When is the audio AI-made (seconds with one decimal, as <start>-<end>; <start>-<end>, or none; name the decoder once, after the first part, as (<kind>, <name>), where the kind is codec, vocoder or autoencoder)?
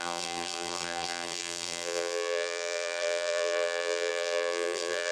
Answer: 0.0-5.1 (vocoder, BigVGAN v2)